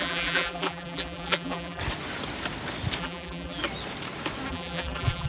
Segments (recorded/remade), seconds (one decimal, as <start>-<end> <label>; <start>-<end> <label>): 0.0-1.8 remade; 1.8-3.0 recorded; 3.0-3.6 remade; 3.6-4.5 recorded; 4.5-5.3 remade

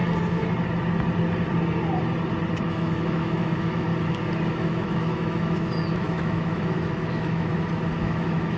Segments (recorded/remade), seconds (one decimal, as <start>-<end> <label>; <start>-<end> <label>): 0.0-2.5 recorded; 2.5-3.9 remade; 3.9-4.5 recorded; 4.5-7.5 remade; 7.5-8.0 recorded; 8.0-8.6 remade

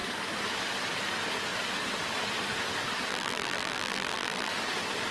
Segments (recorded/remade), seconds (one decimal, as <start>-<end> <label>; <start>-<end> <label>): 0.0-3.1 recorded; 3.1-4.5 remade; 4.5-5.1 recorded

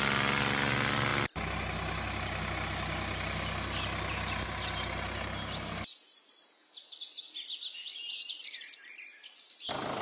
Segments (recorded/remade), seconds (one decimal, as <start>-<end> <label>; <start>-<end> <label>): 0.0-7.9 recorded; 7.9-9.0 remade; 9.0-10.0 recorded

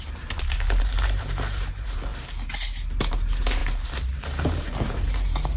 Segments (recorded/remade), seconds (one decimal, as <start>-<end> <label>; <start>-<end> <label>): 0.0-2.1 remade; 2.1-3.1 recorded; 3.1-5.6 remade

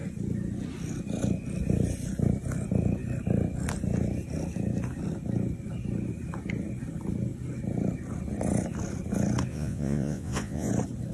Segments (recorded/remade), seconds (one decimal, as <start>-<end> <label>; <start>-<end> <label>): 0.0-9.5 recorded; 9.5-10.7 remade; 10.7-11.1 recorded

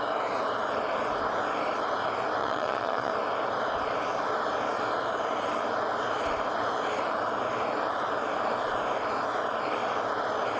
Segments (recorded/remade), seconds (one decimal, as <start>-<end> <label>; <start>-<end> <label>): 0.0-2.4 recorded; 2.4-3.1 remade; 3.1-10.6 recorded